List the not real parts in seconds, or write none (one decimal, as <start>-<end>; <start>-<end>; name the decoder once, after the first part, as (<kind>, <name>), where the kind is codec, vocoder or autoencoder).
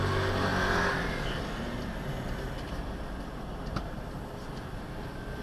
none